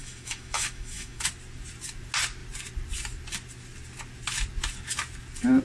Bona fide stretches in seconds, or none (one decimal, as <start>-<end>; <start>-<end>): 1.2-5.6